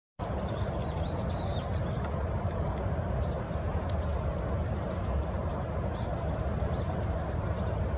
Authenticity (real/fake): fake